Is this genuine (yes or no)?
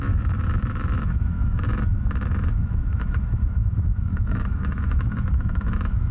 no